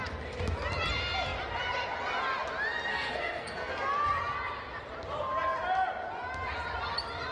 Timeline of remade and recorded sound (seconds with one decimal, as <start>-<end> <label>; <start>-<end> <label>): 0.0-2.9 recorded; 2.9-3.7 remade; 3.7-7.3 recorded